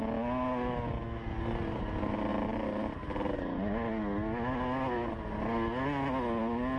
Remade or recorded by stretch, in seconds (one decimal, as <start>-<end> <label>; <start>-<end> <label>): 0.0-6.8 recorded